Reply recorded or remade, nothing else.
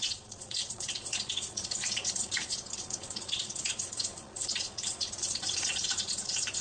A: remade